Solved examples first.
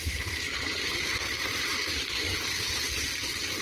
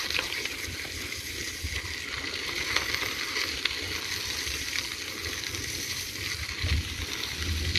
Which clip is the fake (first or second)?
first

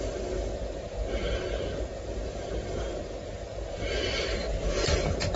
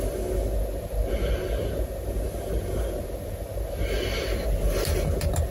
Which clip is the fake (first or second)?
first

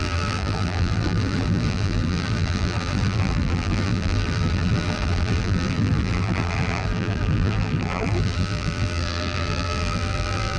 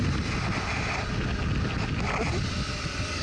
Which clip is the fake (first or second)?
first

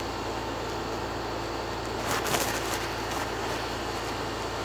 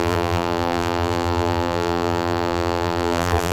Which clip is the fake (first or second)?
second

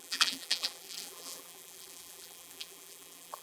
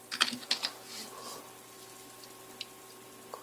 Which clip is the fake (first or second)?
first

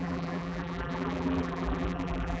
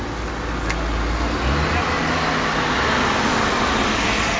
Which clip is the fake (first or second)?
first